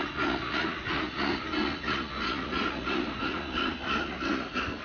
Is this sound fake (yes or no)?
yes